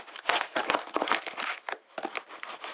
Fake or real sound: real